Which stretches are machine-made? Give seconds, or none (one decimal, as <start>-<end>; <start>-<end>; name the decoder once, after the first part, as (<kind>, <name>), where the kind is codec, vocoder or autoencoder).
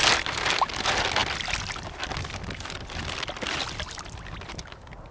none